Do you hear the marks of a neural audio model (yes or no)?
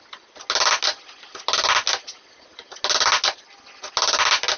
no